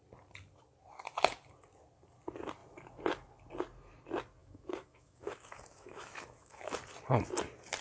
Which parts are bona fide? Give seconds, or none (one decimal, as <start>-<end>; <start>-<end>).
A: 0.0-4.4; 6.8-7.8